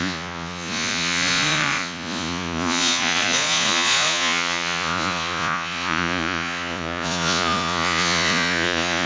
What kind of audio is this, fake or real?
fake